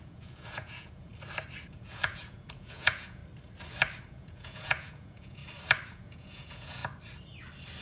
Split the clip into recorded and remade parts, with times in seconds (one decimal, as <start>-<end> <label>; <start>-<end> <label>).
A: 0.0-1.1 remade; 1.1-1.7 recorded; 1.7-3.2 remade; 3.2-4.1 recorded; 4.1-5.4 remade; 5.4-5.9 recorded; 5.9-6.8 remade; 6.8-7.8 recorded